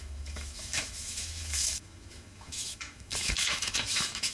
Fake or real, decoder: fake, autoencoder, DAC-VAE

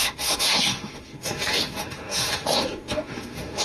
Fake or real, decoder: fake, autoencoder, DAC-VAE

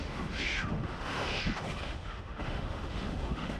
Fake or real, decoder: fake, autoencoder, DAC-VAE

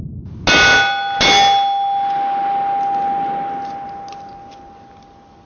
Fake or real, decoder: real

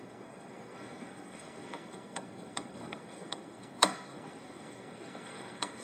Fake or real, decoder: fake, codec, SNAC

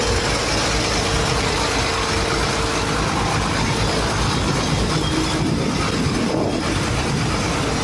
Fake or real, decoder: real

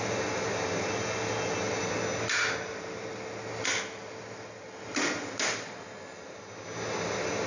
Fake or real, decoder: real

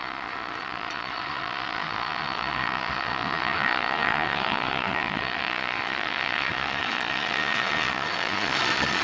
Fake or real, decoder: fake, vocoder, Vocos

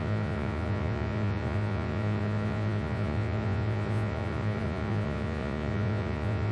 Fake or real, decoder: fake, vocoder, Vocos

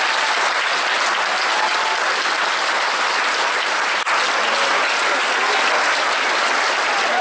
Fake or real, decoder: real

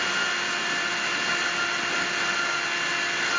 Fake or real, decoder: real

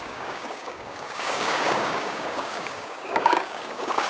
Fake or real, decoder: fake, codec, DAC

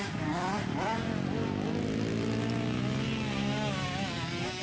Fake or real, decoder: real